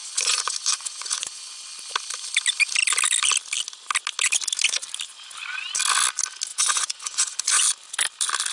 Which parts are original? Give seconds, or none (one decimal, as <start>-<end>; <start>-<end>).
1.5-6.5; 7.6-8.5